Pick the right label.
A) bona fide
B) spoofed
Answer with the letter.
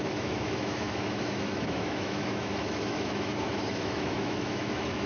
B